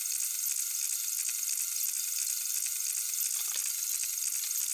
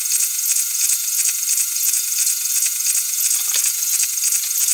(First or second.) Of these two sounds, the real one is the first